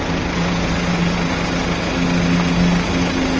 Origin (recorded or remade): recorded